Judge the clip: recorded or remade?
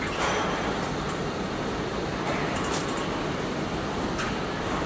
recorded